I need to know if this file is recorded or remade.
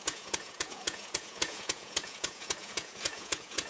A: remade